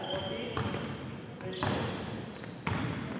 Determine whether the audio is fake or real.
real